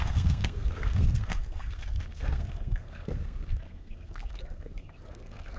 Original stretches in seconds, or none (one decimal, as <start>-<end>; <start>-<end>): none